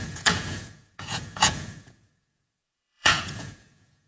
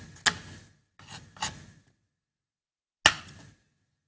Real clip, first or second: second